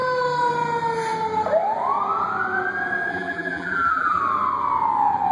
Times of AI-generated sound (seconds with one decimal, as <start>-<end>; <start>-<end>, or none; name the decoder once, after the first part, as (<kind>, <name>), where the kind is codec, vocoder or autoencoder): 3.1-4.2 (vocoder, BigVGAN v2)